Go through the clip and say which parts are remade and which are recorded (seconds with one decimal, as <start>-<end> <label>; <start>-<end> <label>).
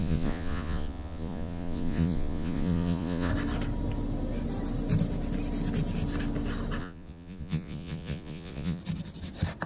0.0-3.3 remade; 3.3-6.8 recorded; 6.8-8.8 remade; 8.8-9.7 recorded